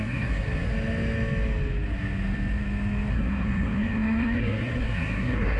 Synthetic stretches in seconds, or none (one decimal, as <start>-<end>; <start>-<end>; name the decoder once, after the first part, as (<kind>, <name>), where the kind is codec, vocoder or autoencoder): 0.0-0.7 (codec, SNAC); 3.1-5.6